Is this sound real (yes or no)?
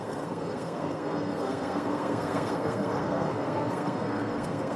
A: no